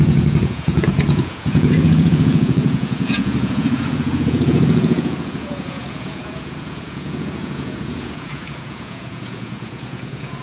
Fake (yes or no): yes